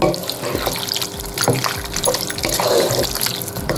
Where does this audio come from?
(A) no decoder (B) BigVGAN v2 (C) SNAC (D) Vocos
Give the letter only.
A